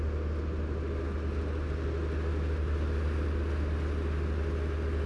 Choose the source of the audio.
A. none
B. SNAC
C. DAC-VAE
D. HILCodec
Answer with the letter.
A